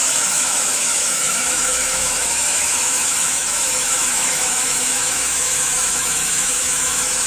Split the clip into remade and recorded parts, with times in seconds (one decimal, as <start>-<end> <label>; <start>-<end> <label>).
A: 0.0-7.3 remade